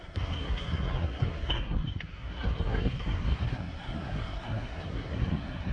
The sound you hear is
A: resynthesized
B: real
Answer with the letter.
A